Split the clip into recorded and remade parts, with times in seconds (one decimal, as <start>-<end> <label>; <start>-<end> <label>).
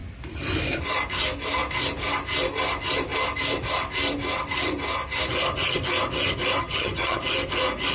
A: 0.0-6.6 recorded; 6.6-7.2 remade; 7.2-7.9 recorded